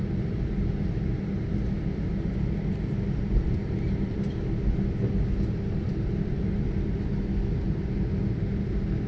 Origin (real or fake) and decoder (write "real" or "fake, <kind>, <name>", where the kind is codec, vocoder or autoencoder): real